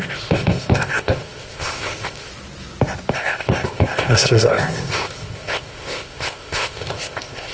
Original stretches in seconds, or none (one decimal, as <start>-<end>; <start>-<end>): 2.3-3.1

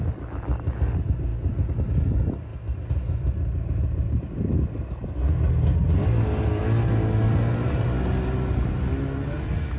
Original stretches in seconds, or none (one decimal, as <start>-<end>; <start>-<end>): 0.0-9.8

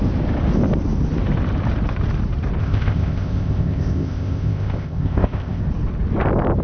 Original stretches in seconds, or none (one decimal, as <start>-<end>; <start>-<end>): 0.0-2.6; 5.6-6.6

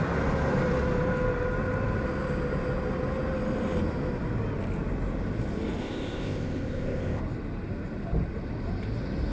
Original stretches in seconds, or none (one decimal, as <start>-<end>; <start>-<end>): 0.0-5.8; 7.2-9.3